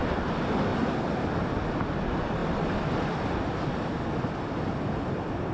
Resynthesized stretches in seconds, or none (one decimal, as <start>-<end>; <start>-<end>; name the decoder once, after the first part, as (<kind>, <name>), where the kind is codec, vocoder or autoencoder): 2.4-4.3 (vocoder, BigVGAN v2)